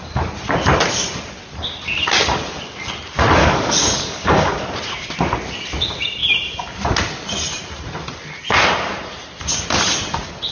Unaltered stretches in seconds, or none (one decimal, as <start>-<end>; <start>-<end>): 0.0-3.4; 4.6-10.5